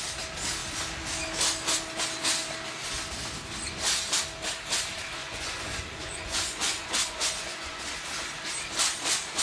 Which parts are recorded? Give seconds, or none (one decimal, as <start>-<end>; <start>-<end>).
0.0-5.2; 7.8-9.4